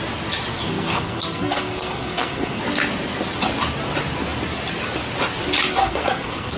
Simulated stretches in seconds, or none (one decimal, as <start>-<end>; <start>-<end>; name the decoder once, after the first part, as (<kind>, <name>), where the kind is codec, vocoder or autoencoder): 0.5-2.6 (codec, SNAC); 5.8-6.6